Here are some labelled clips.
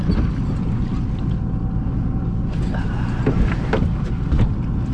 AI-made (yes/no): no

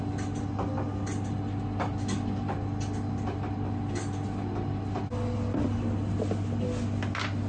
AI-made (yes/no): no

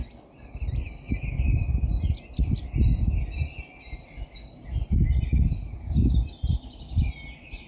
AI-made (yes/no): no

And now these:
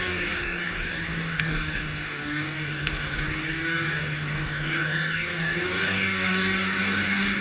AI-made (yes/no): yes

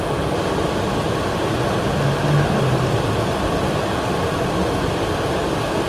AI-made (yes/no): no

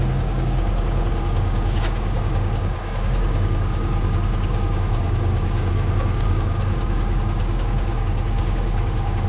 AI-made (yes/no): yes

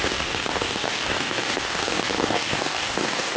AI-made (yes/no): yes